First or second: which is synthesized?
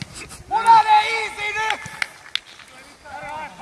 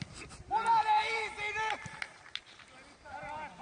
second